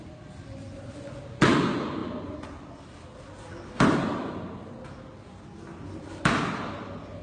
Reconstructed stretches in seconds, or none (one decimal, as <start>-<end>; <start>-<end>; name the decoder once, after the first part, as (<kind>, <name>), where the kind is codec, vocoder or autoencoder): none